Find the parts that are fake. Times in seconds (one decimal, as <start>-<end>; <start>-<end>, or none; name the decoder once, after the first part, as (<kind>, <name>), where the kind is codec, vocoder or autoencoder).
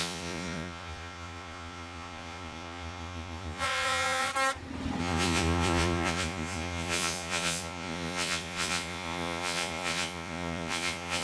0.0-4.3 (vocoder, Vocos); 5.0-11.2